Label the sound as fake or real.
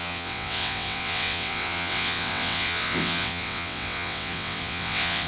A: fake